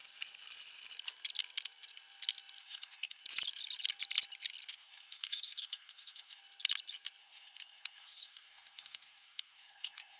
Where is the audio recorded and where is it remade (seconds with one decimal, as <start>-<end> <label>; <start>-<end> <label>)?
0.0-2.6 recorded; 2.6-3.2 remade; 3.2-4.7 recorded; 4.7-6.4 remade; 6.4-7.2 recorded; 7.2-10.2 remade